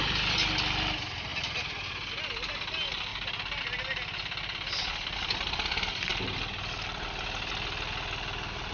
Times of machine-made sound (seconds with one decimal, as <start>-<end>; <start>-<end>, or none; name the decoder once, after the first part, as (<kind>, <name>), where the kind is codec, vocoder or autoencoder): none